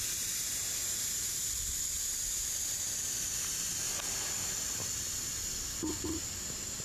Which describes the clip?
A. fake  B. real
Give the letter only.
B